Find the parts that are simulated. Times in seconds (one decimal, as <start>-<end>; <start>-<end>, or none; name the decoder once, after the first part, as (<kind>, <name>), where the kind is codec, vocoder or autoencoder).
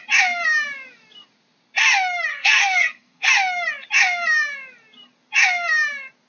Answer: 2.3-3.3 (codec, SNAC)